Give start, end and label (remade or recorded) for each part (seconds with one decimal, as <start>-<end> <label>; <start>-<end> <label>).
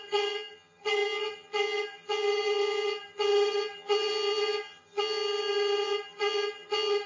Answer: 0.0-7.1 remade